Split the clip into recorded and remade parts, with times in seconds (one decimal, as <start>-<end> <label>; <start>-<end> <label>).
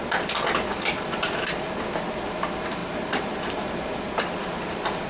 0.0-2.8 recorded; 2.8-4.0 remade; 4.0-5.1 recorded